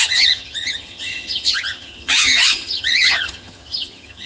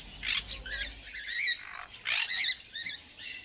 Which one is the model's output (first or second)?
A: first